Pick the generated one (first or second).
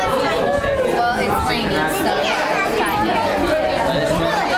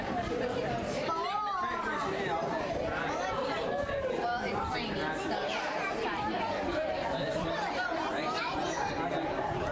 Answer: second